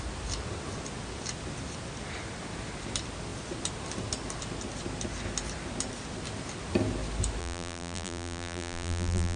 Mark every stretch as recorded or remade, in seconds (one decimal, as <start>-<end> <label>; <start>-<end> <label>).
0.0-7.4 recorded; 7.4-9.4 remade

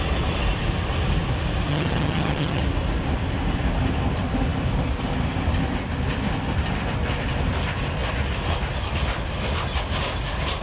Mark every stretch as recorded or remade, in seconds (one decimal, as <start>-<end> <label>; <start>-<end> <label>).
0.0-1.7 recorded; 1.7-2.6 remade; 2.6-10.6 recorded